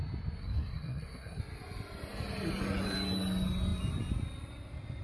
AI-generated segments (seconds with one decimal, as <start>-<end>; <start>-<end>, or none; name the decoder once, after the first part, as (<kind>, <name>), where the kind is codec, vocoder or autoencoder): 0.4-1.4 (codec, SNAC)